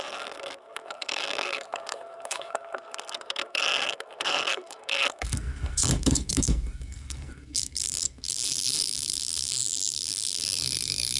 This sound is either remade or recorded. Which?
remade